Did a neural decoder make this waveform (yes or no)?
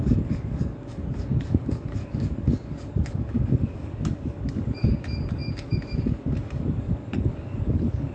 yes